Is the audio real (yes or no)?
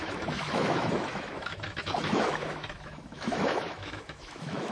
no